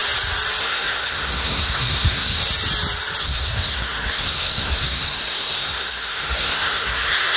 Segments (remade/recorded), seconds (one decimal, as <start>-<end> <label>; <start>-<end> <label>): 0.0-0.6 recorded; 0.6-2.4 remade; 2.4-3.2 recorded; 3.2-7.4 remade